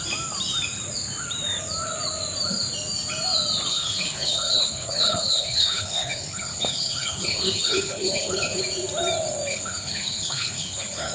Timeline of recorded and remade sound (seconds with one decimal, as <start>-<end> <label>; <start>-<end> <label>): 0.0-3.7 recorded; 3.7-8.6 remade; 8.6-9.5 recorded; 9.5-11.1 remade